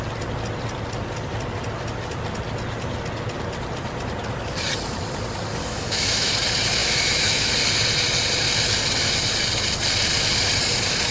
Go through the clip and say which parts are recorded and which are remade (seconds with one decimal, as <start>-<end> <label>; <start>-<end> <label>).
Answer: 0.0-5.6 recorded; 5.6-6.3 remade; 6.3-6.8 recorded; 6.8-7.5 remade; 7.5-11.1 recorded